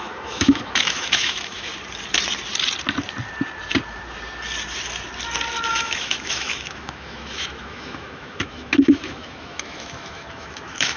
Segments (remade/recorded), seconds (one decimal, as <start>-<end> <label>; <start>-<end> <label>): 0.0-1.7 remade; 1.7-5.7 recorded; 5.7-11.0 remade